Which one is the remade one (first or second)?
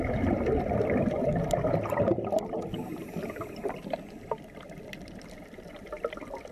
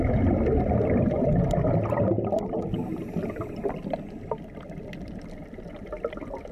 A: first